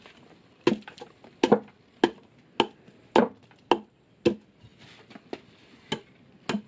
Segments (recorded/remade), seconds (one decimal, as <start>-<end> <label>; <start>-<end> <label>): 0.0-6.7 recorded